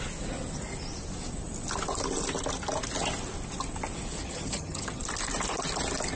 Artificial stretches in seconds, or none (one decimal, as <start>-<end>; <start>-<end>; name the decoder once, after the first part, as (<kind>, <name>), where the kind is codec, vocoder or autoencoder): 4.2-5.0 (vocoder, HiFi-GAN)